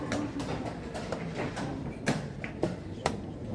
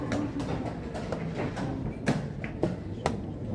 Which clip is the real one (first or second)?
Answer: second